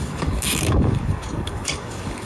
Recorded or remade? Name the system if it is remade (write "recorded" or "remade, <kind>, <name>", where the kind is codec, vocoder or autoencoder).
remade, codec, DAC